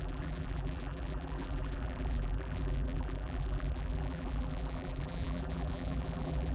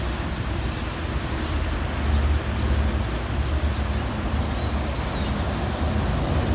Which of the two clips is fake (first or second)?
first